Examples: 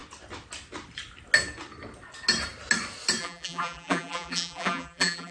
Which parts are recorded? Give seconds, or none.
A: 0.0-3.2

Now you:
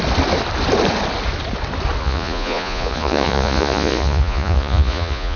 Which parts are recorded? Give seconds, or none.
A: 0.0-2.0